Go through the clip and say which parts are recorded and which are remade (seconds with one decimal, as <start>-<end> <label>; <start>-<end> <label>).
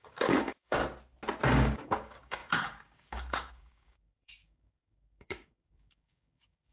0.0-0.8 remade; 0.8-1.5 recorded; 1.5-6.7 remade